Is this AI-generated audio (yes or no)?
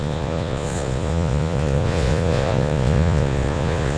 yes